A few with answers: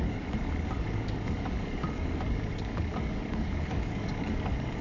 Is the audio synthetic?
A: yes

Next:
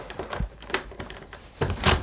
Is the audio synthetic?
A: yes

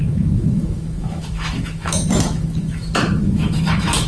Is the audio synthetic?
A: yes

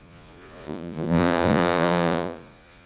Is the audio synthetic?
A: yes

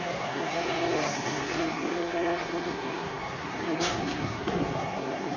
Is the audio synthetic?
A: yes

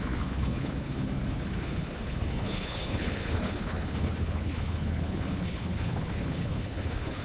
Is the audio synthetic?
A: yes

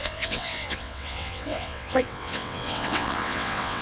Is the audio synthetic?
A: yes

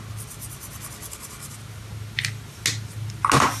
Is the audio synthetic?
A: no